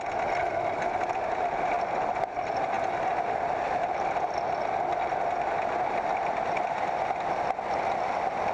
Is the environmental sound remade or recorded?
recorded